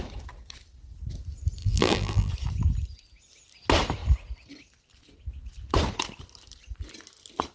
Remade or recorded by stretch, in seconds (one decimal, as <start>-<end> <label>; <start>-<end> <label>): 0.0-1.6 recorded; 1.6-2.3 remade; 2.3-7.5 recorded